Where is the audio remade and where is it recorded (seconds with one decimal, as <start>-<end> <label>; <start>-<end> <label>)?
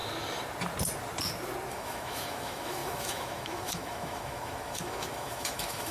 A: 0.0-1.7 recorded; 1.7-5.9 remade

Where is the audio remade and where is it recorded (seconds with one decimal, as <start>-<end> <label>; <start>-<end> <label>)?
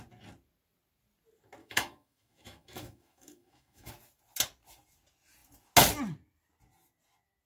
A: 0.0-1.6 recorded; 1.6-3.9 remade; 3.9-7.5 recorded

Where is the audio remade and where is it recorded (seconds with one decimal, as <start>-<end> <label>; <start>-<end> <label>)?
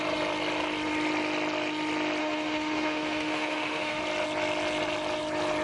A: 0.0-2.2 recorded; 2.2-4.0 remade; 4.0-5.6 recorded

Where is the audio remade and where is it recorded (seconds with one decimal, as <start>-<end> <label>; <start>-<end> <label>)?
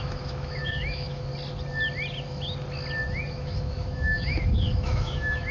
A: 0.0-1.3 remade; 1.3-3.3 recorded; 3.3-5.5 remade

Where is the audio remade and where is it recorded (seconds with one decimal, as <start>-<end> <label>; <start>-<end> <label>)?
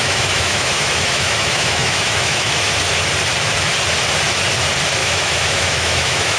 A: 0.0-2.7 remade; 2.7-5.0 recorded; 5.0-6.4 remade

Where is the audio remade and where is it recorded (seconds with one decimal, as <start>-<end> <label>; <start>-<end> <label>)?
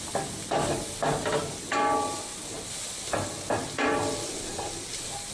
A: 0.0-5.3 recorded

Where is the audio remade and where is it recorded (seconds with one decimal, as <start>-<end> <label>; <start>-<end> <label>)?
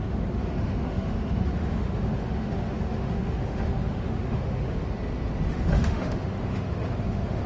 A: 0.0-4.8 remade; 4.8-5.5 recorded; 5.5-7.5 remade